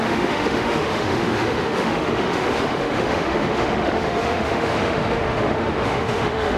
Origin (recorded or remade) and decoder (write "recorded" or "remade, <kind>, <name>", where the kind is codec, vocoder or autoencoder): remade, autoencoder, DAC-VAE